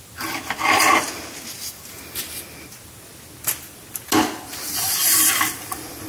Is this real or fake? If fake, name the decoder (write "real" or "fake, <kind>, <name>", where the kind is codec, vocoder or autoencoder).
real